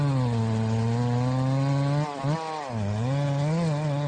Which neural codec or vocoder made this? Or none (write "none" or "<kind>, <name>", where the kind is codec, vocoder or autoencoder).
none